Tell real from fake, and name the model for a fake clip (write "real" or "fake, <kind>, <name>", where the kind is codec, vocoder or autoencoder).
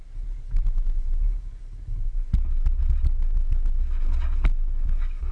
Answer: real